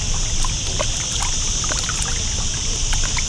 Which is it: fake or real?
real